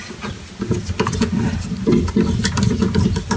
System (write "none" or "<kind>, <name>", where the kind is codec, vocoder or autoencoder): none